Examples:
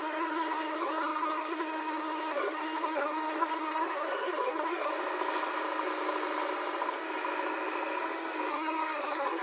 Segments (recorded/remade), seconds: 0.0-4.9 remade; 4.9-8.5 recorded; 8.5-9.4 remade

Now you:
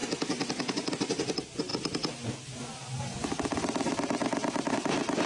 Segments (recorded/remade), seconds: 0.0-5.3 recorded

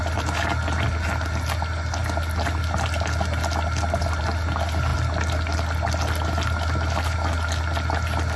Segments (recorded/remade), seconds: 0.0-8.4 recorded